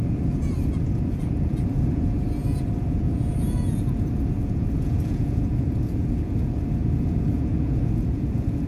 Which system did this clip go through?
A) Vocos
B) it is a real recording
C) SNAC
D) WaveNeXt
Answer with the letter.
A